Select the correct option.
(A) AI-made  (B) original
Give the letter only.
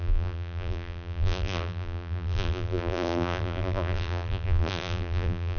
A